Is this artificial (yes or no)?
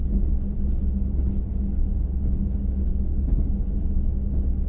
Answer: no